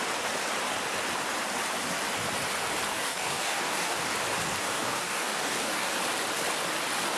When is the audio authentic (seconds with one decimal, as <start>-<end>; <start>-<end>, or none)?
0.0-2.9; 4.0-4.6; 5.9-7.2